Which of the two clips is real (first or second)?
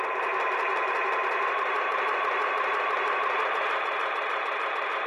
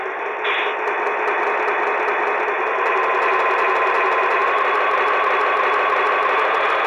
second